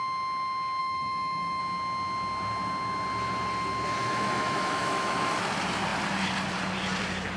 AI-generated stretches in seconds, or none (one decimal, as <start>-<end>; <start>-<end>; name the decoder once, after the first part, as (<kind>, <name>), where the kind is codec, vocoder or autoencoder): 0.8-1.6 (autoencoder, DAC-VAE); 4.0-5.4